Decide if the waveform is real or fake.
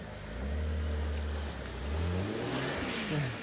real